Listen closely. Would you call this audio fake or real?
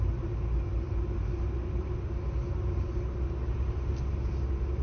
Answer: real